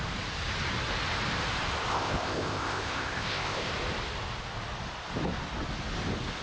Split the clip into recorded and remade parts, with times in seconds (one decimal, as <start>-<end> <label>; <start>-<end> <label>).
0.0-1.9 recorded; 1.9-3.7 remade; 3.7-6.4 recorded